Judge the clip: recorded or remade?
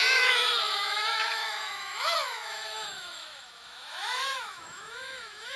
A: remade